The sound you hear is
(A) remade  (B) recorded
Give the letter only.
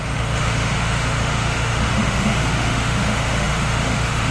A